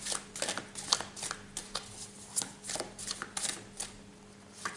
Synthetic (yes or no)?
no